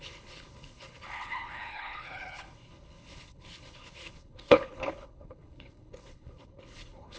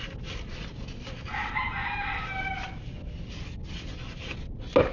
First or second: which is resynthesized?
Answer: first